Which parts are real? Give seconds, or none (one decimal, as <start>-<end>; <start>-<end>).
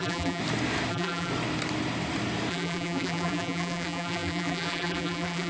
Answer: 0.4-0.9; 1.3-2.5